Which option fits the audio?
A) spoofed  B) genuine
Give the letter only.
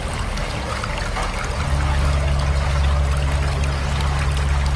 B